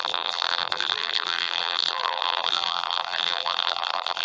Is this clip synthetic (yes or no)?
yes